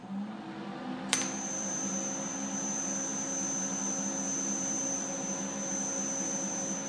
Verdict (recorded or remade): recorded